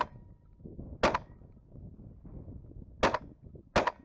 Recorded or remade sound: recorded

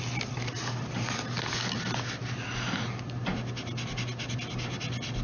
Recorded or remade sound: recorded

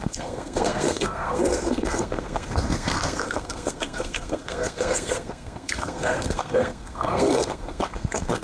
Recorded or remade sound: remade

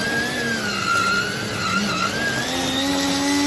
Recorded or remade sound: recorded